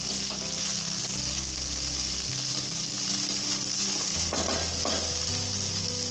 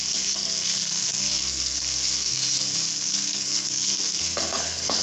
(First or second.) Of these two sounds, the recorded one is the first